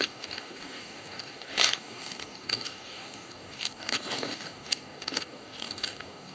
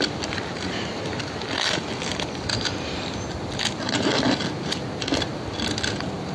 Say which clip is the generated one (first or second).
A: first